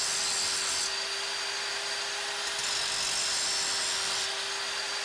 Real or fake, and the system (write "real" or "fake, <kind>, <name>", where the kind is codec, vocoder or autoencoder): real